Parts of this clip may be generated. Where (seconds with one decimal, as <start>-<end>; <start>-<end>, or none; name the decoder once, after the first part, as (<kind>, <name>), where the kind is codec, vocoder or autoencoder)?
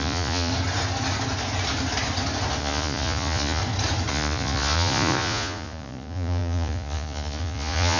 0.0-0.5 (vocoder, Vocos); 2.6-3.6; 4.1-8.0